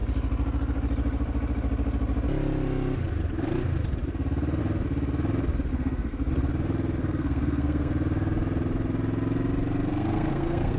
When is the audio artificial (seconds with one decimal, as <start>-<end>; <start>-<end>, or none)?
5.7-6.3; 7.0-7.9; 9.9-10.8